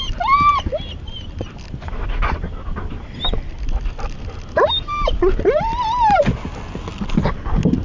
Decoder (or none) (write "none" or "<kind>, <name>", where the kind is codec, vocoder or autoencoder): none